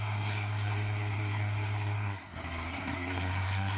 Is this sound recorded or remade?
remade